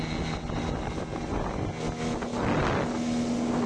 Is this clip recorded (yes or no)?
yes